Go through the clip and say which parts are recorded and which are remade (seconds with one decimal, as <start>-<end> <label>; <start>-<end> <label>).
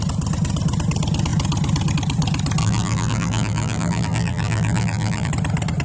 0.0-2.6 recorded; 2.6-5.3 remade; 5.3-5.8 recorded